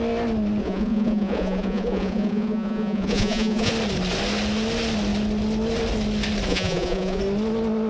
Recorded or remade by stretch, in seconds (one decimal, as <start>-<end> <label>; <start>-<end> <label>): 0.0-0.6 recorded; 0.6-3.7 remade; 3.7-6.5 recorded; 6.5-7.2 remade; 7.2-7.9 recorded